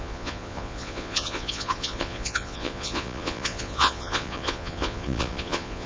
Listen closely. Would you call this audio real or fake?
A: fake